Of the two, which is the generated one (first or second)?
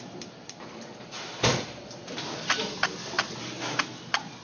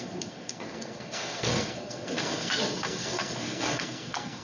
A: second